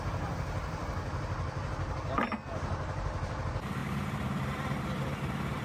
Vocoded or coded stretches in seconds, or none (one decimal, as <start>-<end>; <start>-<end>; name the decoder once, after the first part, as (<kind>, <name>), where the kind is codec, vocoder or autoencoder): 2.7-3.4 (vocoder, BigVGAN v2); 3.8-4.8